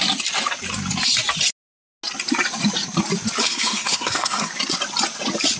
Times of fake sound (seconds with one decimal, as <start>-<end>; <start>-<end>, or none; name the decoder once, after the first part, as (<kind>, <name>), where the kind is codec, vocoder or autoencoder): 3.4-4.5 (codec, SNAC)